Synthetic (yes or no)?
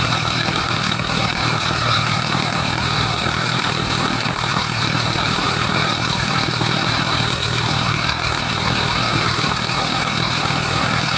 yes